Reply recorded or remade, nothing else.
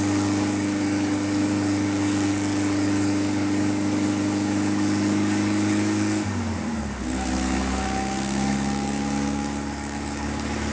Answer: remade